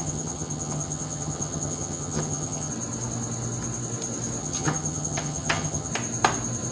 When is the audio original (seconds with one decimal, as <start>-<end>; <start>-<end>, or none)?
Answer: 2.7-4.4; 5.9-6.7